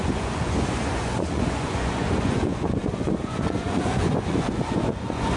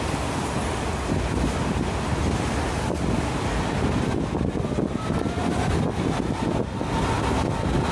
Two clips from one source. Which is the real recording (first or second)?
second